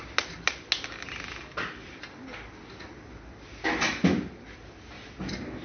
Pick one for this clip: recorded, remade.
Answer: recorded